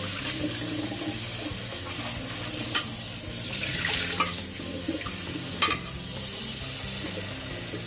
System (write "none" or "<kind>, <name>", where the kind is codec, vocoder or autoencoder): none